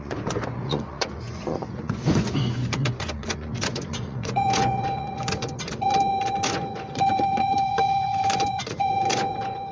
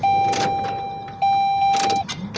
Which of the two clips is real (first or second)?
second